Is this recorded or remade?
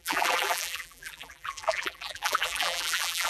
remade